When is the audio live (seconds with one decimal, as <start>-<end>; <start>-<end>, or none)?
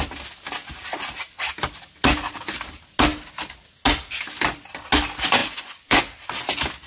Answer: 0.0-5.4; 6.0-6.9